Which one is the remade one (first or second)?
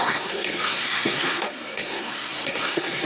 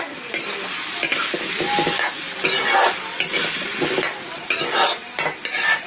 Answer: first